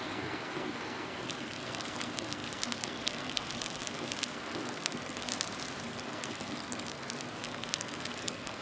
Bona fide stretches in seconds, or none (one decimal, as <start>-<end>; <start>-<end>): 5.3-5.8